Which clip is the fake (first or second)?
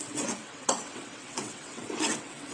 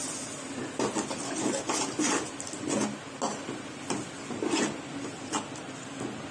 first